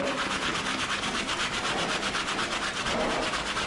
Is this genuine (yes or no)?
yes